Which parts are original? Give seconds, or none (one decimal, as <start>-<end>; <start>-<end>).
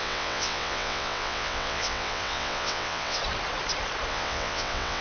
3.2-4.1